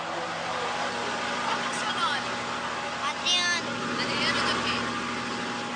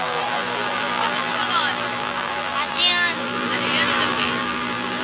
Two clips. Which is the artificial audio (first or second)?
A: second